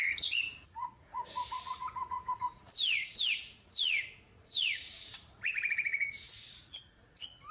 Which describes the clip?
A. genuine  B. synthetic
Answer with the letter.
B